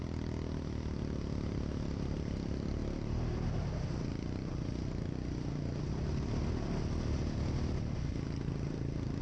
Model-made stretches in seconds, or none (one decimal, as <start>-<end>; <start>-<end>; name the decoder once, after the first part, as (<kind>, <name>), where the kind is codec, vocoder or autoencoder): none